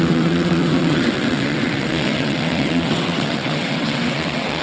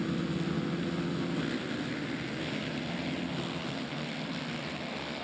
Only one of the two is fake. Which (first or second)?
first